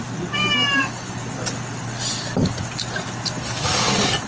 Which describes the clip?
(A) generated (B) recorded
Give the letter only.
B